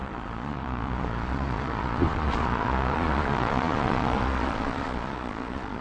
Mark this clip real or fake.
fake